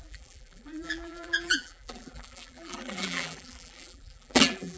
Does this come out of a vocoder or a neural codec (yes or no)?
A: yes